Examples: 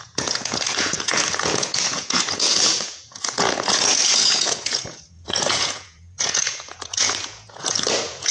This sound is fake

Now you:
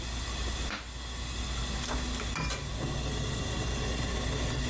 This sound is real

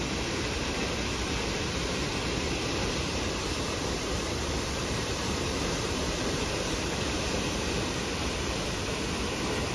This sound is fake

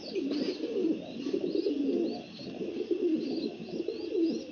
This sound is real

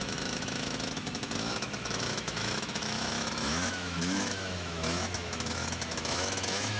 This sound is fake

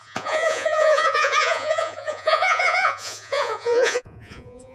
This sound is fake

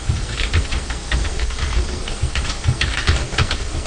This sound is fake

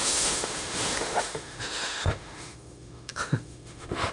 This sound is fake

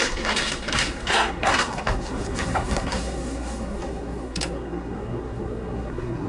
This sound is fake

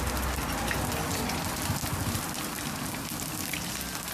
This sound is real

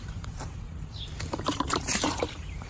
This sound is fake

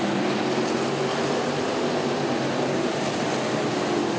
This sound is real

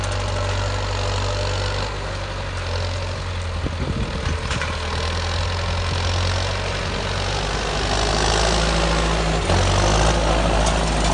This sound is real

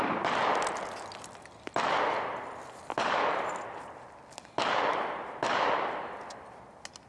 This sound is real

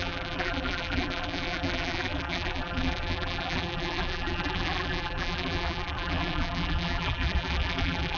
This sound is fake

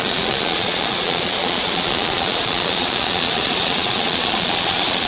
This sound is fake